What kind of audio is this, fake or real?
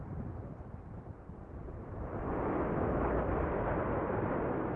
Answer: real